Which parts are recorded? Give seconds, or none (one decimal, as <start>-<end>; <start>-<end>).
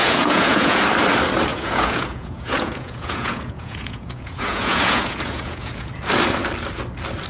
0.8-1.5; 5.9-7.3